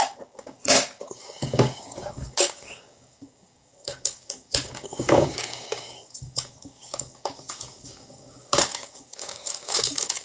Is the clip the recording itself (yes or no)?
no